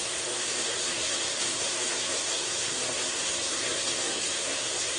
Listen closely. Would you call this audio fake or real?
fake